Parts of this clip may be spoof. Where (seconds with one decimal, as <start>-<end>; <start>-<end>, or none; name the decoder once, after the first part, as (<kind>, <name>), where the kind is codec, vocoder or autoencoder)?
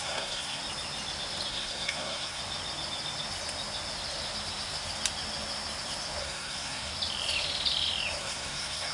0.0-0.6 (codec, SNAC); 1.5-2.4; 6.2-6.9; 8.2-8.9